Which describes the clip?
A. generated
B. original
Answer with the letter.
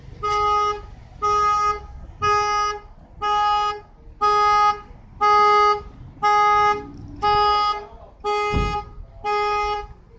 B